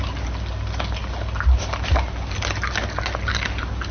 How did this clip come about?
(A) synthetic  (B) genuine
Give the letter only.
B